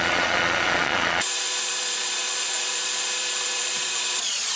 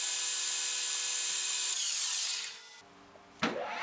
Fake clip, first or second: first